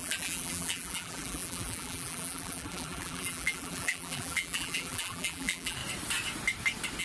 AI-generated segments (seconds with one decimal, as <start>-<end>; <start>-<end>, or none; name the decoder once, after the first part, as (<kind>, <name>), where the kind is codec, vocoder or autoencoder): 0.0-5.8 (vocoder, BigVGAN v2)

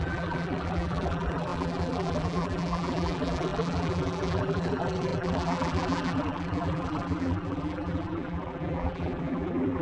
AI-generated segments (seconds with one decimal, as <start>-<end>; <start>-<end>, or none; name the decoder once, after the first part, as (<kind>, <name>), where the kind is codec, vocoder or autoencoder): 0.0-9.8 (vocoder, BigVGAN v2)

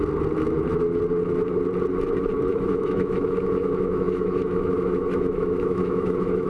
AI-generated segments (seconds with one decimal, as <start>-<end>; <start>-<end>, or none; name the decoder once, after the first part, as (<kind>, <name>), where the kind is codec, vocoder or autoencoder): 2.5-6.5 (autoencoder, DAC-VAE)

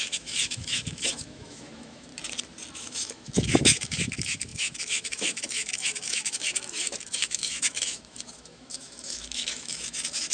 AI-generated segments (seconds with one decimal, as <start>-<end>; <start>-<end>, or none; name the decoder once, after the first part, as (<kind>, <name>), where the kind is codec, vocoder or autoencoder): 0.0-2.1 (autoencoder, DAC-VAE); 2.7-10.3

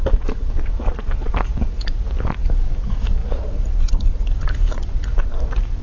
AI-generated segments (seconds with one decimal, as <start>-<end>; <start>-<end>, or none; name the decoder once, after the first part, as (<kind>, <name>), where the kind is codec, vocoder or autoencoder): none